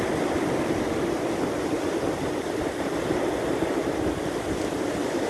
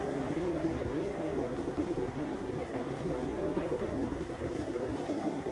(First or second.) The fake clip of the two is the second